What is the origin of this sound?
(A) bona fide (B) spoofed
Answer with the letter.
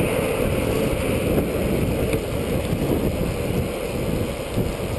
A